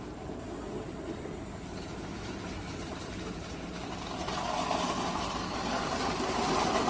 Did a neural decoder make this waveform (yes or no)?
no